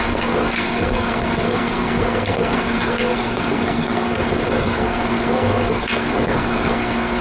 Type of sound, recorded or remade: remade